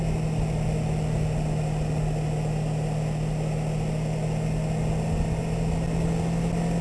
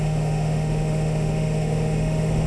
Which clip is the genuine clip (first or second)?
first